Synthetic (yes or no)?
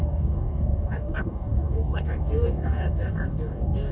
yes